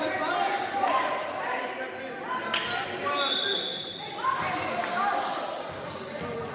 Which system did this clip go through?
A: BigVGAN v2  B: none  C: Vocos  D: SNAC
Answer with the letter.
B